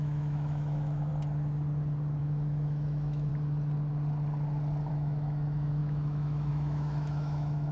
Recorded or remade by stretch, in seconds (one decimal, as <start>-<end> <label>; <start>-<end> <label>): 0.0-1.1 remade; 1.1-2.2 recorded; 2.2-3.3 remade; 3.3-4.9 recorded; 4.9-7.7 remade